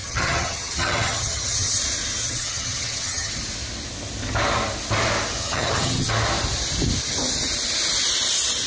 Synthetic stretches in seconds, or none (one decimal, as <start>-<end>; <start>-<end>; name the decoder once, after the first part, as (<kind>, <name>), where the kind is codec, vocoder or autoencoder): 0.0-1.8 (vocoder, HiFi-GAN); 2.2-3.3; 5.4-6.1